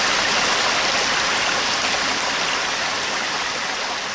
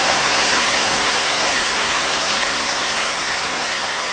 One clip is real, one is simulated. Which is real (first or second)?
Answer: first